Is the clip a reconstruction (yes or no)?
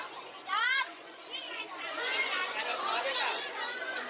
yes